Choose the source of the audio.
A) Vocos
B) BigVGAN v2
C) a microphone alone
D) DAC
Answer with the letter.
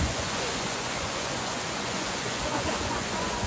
A